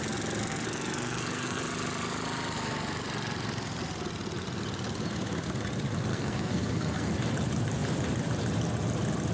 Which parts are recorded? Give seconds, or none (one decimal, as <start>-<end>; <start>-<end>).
0.0-0.4; 1.6-6.1; 7.1-9.3